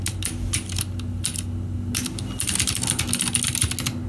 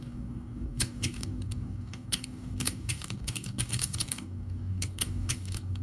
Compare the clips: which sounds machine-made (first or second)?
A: second